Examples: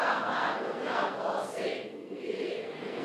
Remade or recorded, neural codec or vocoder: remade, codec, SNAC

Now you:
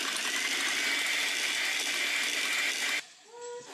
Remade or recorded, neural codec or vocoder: recorded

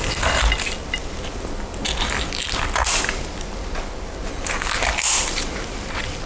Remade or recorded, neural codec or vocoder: recorded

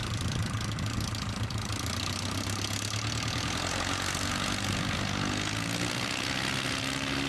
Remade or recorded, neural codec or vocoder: recorded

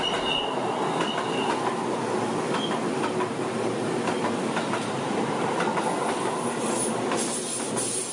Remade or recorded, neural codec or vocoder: recorded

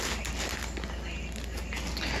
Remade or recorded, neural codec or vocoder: recorded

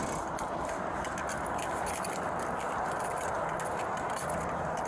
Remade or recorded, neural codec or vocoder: recorded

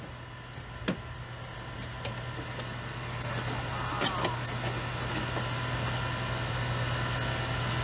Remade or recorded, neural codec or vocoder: recorded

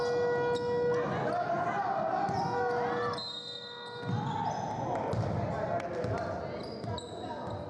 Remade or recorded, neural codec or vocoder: recorded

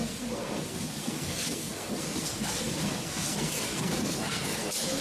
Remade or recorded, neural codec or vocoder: remade, codec, SNAC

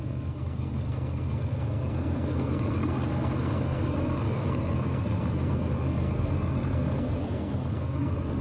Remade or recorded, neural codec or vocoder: remade, codec, SNAC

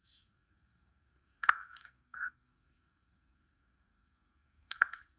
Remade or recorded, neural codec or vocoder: remade, codec, SNAC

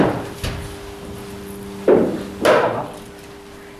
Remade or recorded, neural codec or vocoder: recorded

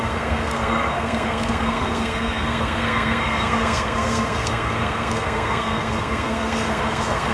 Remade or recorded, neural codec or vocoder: remade, codec, SNAC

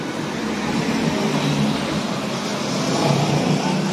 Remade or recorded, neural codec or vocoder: recorded